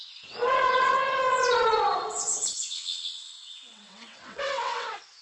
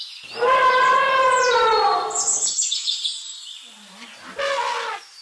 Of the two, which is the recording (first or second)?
second